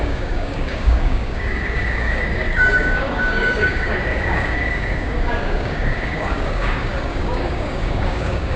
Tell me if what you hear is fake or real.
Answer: fake